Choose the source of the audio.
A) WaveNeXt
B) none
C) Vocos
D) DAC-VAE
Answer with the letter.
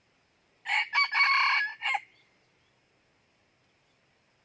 B